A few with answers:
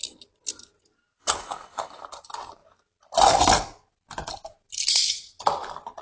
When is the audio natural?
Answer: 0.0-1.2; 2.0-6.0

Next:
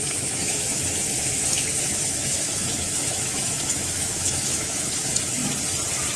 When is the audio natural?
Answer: 5.4-6.2